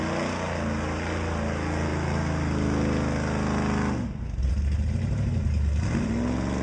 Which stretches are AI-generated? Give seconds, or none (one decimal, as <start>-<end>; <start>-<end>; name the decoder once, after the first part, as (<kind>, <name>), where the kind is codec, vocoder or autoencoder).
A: none